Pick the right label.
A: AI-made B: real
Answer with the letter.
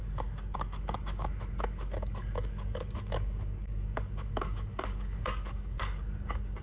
A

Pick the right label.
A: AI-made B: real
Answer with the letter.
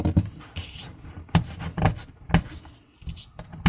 B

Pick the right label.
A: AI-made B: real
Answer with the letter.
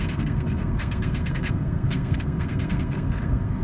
A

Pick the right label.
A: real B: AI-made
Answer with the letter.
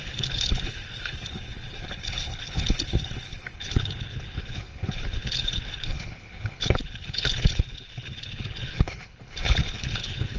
B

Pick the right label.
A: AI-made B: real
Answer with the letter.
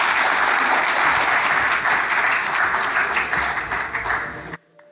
B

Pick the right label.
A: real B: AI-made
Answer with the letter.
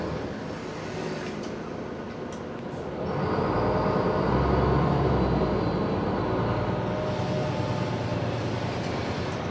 A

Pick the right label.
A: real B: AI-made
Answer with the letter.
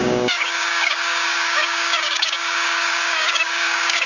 B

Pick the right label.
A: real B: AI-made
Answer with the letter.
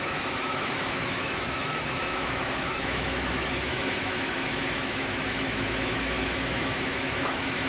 B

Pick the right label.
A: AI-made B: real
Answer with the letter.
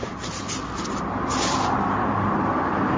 B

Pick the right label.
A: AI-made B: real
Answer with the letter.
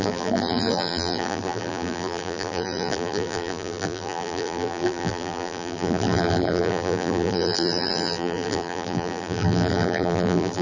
A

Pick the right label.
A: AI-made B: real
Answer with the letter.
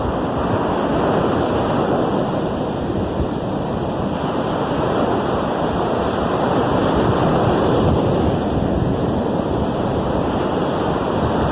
B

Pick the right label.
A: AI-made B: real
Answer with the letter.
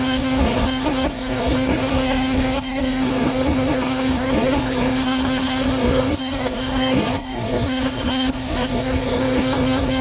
A